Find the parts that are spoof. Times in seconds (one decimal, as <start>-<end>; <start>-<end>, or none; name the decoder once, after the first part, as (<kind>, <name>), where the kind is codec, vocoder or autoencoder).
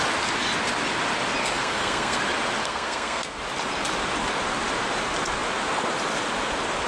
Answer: 1.4-2.2 (codec, SNAC); 2.6-3.4